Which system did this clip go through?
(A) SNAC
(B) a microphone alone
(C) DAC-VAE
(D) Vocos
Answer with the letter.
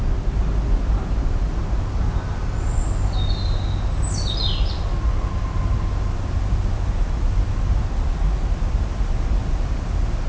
B